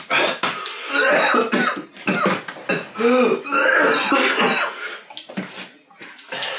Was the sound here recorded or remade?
recorded